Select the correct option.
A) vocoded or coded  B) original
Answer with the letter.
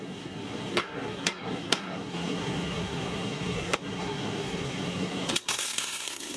A